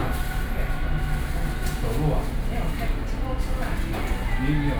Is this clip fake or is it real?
real